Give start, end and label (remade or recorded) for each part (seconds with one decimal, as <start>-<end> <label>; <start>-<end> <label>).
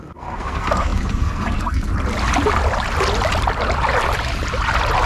0.0-1.9 remade; 1.9-5.1 recorded